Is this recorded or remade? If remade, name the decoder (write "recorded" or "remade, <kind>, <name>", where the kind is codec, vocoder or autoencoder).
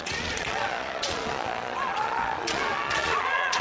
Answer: remade, vocoder, Vocos